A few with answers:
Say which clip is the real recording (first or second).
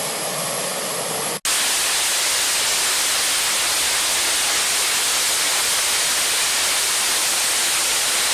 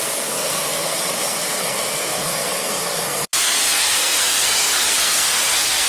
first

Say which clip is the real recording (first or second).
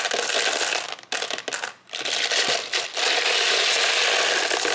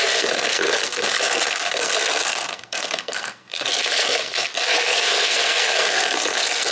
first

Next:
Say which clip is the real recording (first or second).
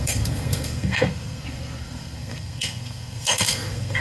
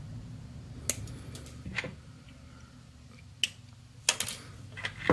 second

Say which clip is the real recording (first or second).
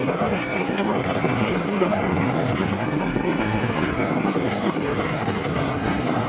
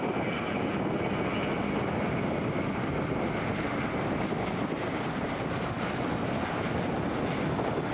second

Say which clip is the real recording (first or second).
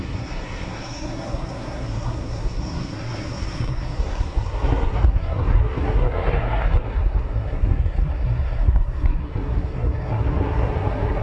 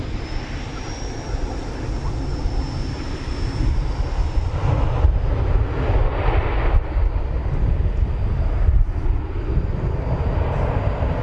second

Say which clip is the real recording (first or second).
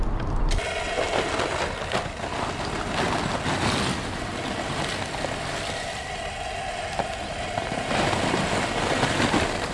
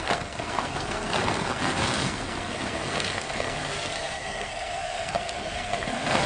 first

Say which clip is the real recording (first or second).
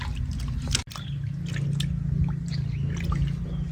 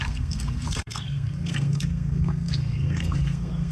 first